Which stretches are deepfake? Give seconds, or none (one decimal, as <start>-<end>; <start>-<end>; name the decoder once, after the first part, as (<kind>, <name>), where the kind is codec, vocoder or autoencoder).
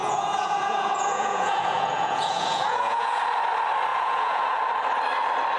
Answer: 0.0-3.2 (vocoder, Vocos); 3.9-4.6